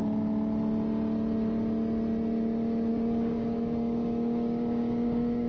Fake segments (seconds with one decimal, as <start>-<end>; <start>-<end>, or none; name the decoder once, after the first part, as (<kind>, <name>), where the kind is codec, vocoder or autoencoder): 2.9-5.5 (codec, DAC)